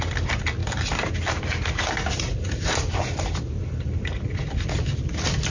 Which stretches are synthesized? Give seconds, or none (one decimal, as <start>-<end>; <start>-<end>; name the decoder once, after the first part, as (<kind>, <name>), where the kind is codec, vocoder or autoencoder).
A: 2.3-3.4 (vocoder, BigVGAN v2)